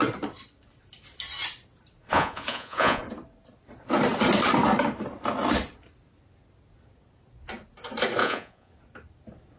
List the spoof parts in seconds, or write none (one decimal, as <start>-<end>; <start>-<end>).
2.0-3.0; 8.2-8.7